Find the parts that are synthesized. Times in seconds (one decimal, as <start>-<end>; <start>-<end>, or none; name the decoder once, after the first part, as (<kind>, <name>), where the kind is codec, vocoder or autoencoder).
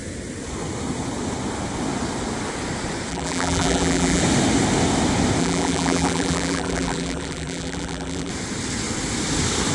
3.1-4.2 (vocoder, BigVGAN v2); 5.4-8.3